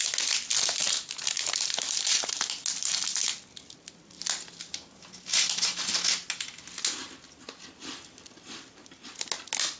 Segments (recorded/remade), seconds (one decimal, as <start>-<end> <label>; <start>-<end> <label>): 0.0-0.8 recorded; 0.8-2.3 remade; 2.3-9.8 recorded